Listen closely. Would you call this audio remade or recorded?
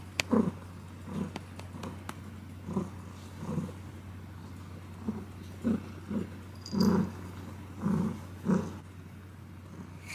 recorded